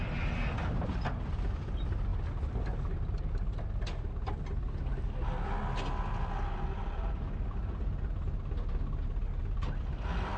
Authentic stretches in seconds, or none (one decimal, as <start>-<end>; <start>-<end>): 0.0-10.4